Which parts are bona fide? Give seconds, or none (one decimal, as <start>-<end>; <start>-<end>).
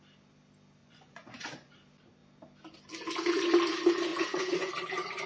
0.0-0.8; 1.7-4.1; 4.7-5.3